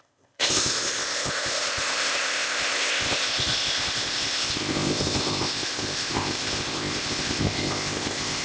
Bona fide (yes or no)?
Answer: no